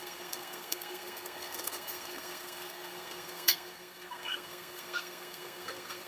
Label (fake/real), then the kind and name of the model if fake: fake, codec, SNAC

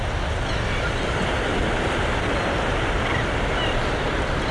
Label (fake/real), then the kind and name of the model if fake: real